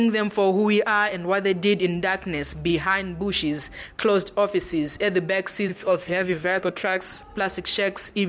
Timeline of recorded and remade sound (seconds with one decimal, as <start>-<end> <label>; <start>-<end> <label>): 0.0-5.7 recorded; 5.7-7.0 remade; 7.0-8.3 recorded